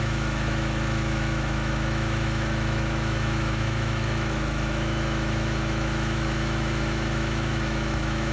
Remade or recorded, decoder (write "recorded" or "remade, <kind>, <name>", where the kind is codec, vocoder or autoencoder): remade, autoencoder, DAC-VAE